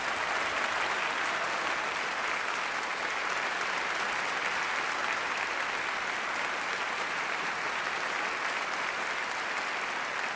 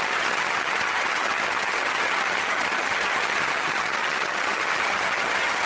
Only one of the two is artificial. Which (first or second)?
second